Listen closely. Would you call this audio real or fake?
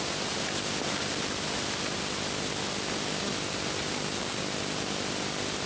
real